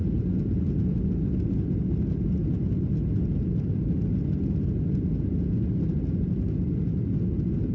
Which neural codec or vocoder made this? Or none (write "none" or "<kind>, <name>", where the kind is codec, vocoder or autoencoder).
none